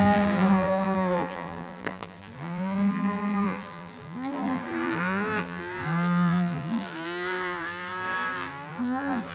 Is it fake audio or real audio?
fake